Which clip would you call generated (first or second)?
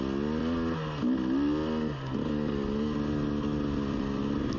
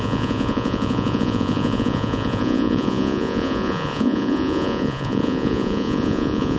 second